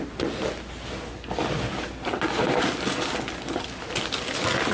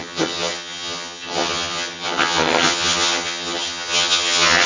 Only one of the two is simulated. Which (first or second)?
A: second